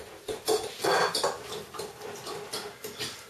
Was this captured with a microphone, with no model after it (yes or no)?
yes